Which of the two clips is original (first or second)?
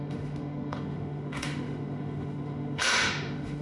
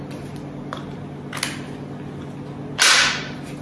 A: second